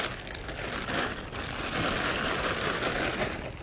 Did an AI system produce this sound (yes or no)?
no